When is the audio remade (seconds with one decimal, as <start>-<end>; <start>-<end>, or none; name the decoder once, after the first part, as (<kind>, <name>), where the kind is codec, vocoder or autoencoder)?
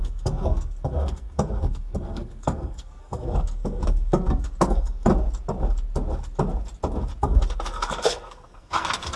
0.0-5.1 (codec, SNAC); 7.2-9.2